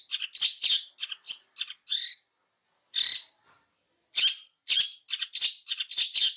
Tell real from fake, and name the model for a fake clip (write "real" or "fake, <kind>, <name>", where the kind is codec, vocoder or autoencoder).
real